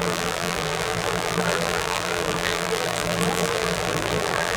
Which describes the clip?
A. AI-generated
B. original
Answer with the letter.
A